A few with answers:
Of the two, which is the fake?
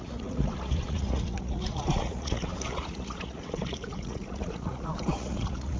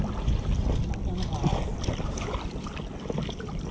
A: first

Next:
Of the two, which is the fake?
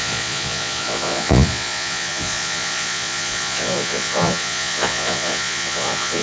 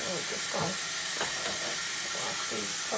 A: first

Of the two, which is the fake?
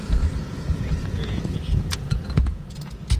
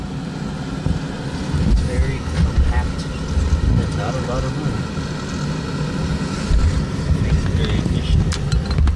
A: first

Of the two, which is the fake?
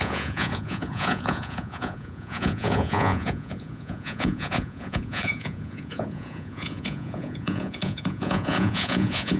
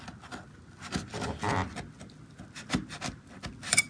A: first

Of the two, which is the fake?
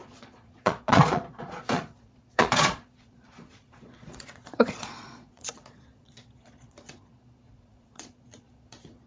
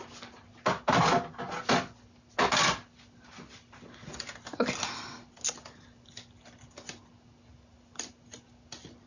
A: first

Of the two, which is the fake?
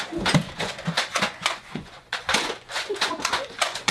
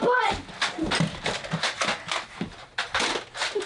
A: first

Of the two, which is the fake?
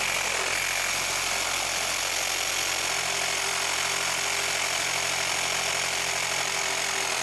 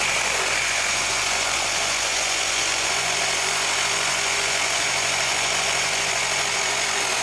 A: second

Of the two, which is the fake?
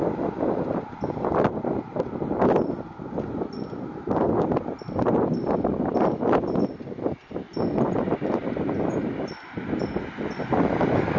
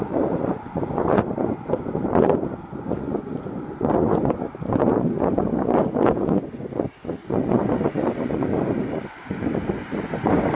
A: second